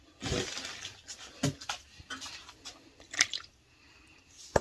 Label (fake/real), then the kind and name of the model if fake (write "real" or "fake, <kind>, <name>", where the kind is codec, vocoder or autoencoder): real